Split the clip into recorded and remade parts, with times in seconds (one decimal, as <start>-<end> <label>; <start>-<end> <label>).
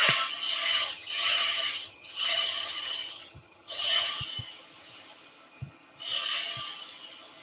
0.0-0.7 recorded; 0.7-4.1 remade; 4.1-7.4 recorded